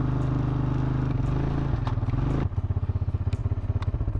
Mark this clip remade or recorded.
recorded